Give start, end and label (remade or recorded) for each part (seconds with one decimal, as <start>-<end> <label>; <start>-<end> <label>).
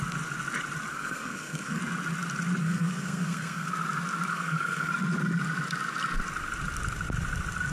0.0-0.9 recorded; 0.9-1.8 remade; 1.8-2.6 recorded; 2.6-3.7 remade; 3.7-4.3 recorded; 4.3-4.9 remade; 4.9-7.7 recorded